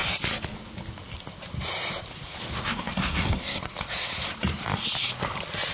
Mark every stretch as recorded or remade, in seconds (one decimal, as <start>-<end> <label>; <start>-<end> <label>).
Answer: 0.0-2.7 recorded; 2.7-3.6 remade; 3.6-5.7 recorded

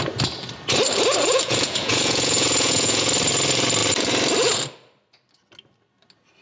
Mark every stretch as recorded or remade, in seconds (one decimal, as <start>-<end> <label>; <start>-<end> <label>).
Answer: 0.0-1.3 recorded; 1.3-3.1 remade; 3.1-6.4 recorded

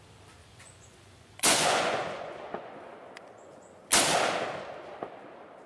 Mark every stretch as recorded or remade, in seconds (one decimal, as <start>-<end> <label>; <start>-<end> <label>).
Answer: 0.0-0.4 recorded; 0.4-3.8 remade; 3.8-5.7 recorded

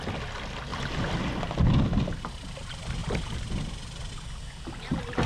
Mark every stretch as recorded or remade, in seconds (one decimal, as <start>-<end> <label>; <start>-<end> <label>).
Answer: 0.0-0.7 recorded; 0.7-1.6 remade; 1.6-3.0 recorded; 3.0-4.1 remade; 4.1-5.3 recorded

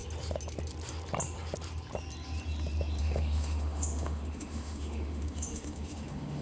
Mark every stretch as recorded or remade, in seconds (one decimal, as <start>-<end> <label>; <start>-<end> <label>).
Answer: 0.0-3.0 recorded; 3.0-6.4 remade

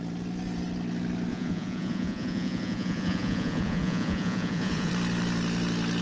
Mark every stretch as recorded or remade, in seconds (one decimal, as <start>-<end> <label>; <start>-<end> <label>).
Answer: 0.0-1.3 recorded; 1.3-4.9 remade; 4.9-6.0 recorded